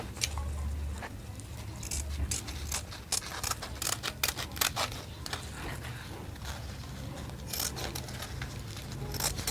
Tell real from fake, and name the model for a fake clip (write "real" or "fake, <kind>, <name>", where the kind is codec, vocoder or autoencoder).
real